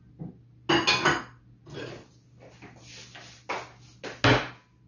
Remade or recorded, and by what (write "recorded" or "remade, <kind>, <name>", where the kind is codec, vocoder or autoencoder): recorded